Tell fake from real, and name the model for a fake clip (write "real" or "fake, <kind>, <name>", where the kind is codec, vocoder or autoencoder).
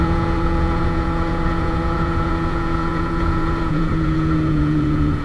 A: fake, vocoder, Vocos